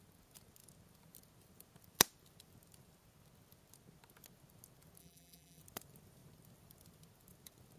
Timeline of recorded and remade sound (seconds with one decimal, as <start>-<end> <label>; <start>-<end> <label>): 0.0-5.0 recorded; 5.0-5.6 remade; 5.6-7.8 recorded